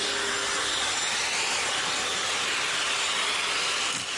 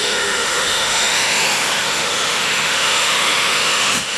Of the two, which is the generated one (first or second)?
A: second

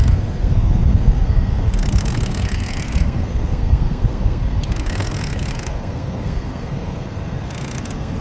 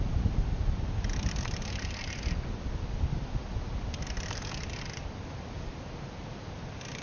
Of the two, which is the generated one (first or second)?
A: first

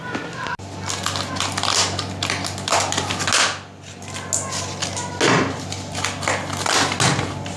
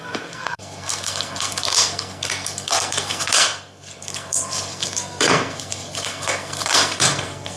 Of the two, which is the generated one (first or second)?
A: second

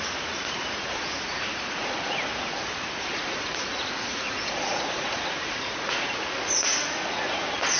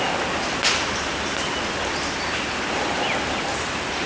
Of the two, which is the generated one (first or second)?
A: first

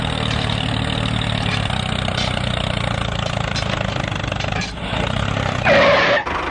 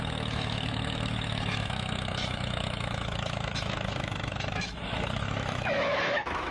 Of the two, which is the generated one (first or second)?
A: second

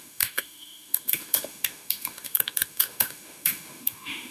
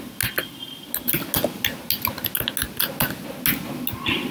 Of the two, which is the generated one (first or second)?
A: first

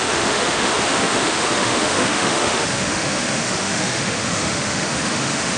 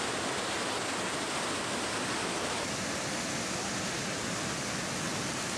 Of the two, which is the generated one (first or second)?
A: first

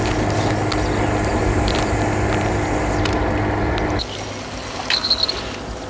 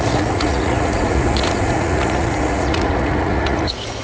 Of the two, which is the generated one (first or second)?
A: second